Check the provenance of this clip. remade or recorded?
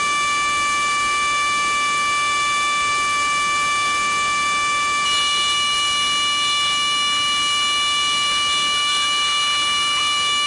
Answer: recorded